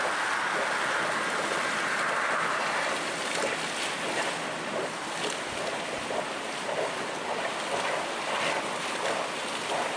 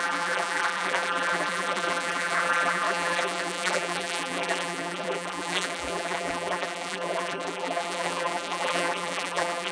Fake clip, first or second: second